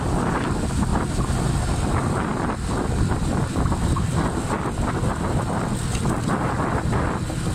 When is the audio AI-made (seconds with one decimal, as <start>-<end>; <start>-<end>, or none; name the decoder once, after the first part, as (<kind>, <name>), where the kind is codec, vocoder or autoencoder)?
0.9-1.5 (vocoder, BigVGAN v2); 2.3-3.8